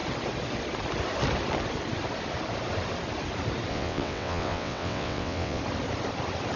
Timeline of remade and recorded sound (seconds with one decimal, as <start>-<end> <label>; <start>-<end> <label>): 0.0-3.7 recorded; 3.7-5.6 remade; 5.6-6.6 recorded